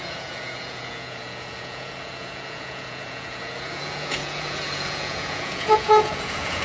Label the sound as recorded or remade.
remade